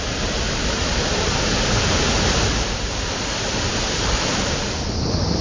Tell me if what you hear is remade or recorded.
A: remade